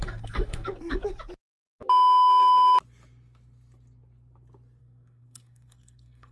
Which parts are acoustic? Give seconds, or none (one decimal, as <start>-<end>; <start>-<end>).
1.0-4.8

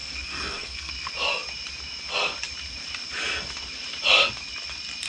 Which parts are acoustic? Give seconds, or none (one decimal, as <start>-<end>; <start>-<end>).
0.9-5.1

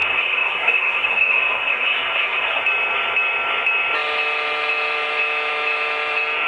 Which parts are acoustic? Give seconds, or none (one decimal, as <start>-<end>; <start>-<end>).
2.6-6.5

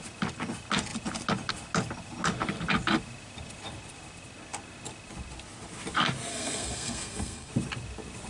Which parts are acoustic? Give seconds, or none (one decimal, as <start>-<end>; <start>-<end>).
0.0-6.3; 7.5-8.3

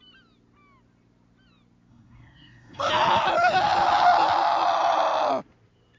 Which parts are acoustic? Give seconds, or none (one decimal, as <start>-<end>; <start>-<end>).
0.0-1.9; 2.9-6.0

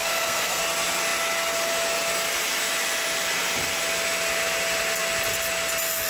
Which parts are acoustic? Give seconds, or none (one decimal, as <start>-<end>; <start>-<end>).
0.6-6.1

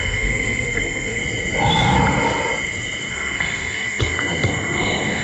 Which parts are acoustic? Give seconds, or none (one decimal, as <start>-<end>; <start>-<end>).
1.2-3.1

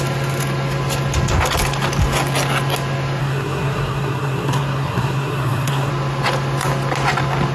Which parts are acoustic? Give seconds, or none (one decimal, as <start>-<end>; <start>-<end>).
0.0-3.2; 5.9-7.5